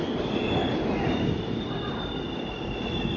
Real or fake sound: real